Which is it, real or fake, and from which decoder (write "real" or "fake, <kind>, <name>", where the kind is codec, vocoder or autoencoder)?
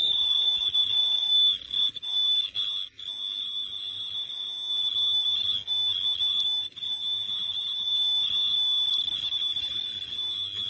real